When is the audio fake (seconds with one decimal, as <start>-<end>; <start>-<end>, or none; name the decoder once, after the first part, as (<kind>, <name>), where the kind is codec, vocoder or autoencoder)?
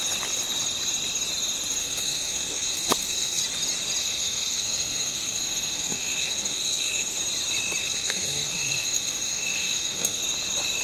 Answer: 1.8-3.4 (codec, SNAC); 4.0-7.2; 7.8-10.2